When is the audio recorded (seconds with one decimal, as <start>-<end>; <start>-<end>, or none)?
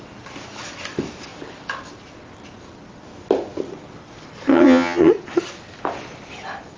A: 0.0-4.5; 5.1-6.8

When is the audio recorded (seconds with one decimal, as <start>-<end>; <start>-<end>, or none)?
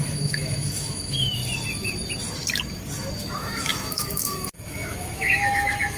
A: 1.4-3.2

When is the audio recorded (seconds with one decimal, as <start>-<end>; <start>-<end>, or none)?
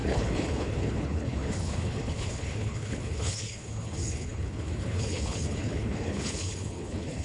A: none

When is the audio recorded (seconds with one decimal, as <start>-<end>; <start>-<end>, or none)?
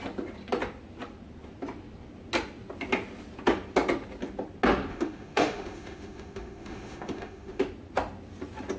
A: 0.0-4.9; 7.6-8.8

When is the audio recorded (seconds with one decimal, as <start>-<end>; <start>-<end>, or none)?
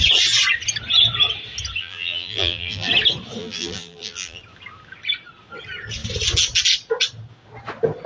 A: 0.0-1.8; 2.9-3.4; 4.4-8.1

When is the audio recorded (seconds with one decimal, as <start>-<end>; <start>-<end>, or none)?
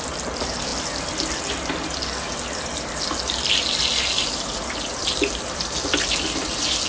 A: 0.0-6.9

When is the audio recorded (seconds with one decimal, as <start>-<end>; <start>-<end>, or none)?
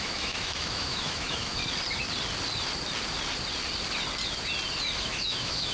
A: 1.6-5.0